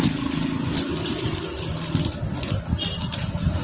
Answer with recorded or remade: recorded